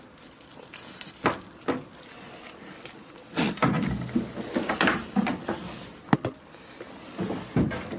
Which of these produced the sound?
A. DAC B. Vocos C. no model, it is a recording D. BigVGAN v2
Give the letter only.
C